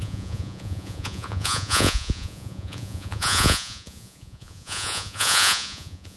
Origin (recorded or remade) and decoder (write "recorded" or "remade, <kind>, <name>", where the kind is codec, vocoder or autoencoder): remade, vocoder, Vocos